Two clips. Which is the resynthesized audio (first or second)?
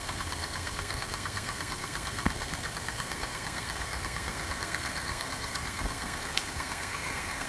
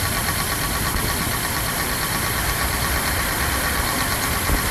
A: first